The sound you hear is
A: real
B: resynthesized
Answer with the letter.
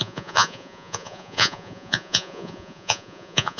B